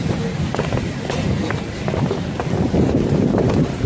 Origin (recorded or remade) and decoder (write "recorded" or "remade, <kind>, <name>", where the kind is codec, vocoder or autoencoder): recorded